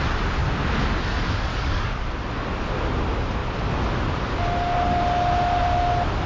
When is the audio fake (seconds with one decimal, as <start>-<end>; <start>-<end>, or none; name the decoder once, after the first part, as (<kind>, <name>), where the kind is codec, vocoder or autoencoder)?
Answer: 1.5-2.0 (codec, DAC)